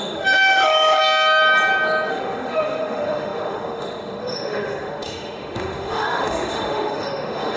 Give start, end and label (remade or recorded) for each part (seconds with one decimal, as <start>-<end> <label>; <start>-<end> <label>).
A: 0.0-1.0 remade; 1.0-2.1 recorded; 2.1-7.6 remade